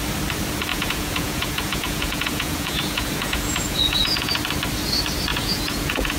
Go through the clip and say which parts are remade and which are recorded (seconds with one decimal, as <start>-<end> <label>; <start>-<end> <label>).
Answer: 0.0-0.7 recorded; 0.7-4.4 remade; 4.4-5.3 recorded; 5.3-6.2 remade